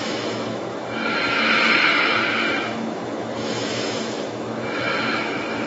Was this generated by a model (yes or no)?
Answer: yes